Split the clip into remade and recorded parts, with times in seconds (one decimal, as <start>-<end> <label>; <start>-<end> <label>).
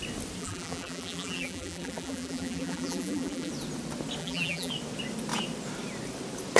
0.0-0.4 recorded; 0.4-3.5 remade; 3.5-4.2 recorded; 4.2-4.7 remade; 4.7-6.6 recorded